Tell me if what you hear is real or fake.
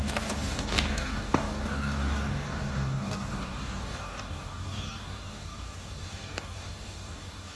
fake